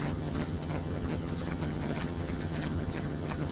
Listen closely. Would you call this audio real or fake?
fake